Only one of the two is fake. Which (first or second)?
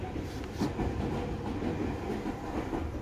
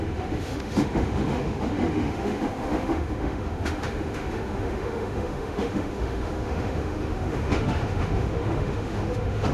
second